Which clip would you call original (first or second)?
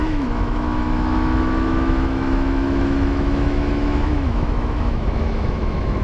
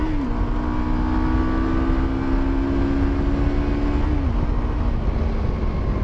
second